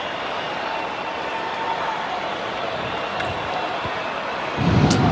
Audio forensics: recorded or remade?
recorded